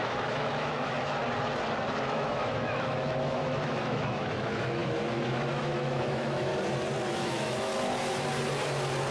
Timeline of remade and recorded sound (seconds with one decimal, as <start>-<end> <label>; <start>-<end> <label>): 0.0-1.2 remade; 1.2-2.0 recorded; 2.0-6.5 remade; 6.5-7.1 recorded; 7.1-7.7 remade; 7.7-9.1 recorded